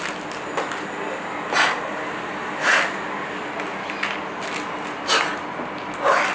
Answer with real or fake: real